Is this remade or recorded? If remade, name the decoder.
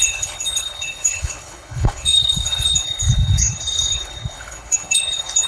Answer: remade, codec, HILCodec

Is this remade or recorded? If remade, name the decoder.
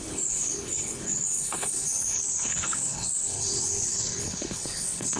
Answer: remade, codec, HILCodec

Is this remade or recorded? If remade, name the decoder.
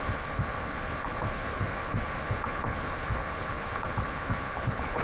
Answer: remade, codec, HILCodec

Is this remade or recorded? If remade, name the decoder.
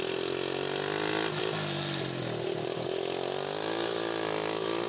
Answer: recorded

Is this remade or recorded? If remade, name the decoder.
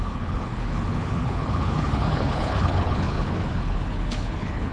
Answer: remade, codec, HILCodec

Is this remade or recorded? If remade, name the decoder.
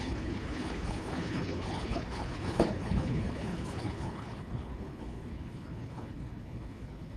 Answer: remade, codec, HILCodec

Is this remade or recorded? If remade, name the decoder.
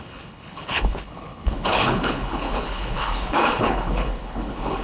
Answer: remade, codec, HILCodec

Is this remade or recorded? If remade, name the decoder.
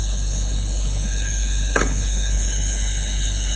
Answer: remade, codec, HILCodec